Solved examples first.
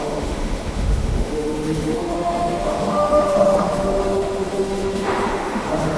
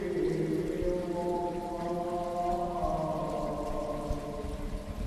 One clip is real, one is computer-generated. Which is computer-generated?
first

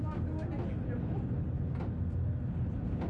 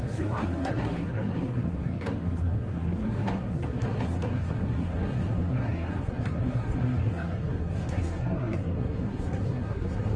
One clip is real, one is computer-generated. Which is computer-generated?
second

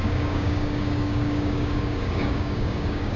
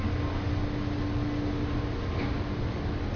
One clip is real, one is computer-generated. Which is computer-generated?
first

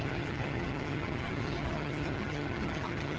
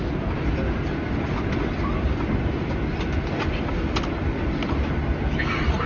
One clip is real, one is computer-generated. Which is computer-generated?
first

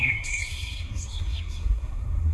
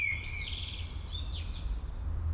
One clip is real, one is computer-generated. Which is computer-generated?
first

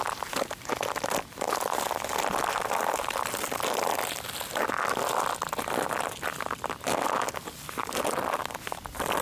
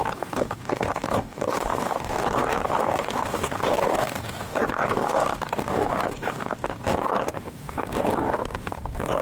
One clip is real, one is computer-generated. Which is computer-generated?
second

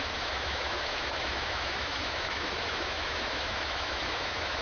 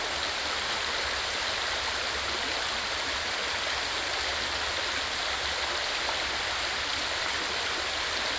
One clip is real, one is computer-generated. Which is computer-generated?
first